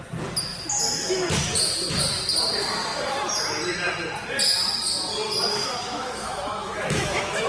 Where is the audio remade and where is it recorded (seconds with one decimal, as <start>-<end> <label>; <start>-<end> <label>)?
0.0-5.6 recorded; 5.6-7.5 remade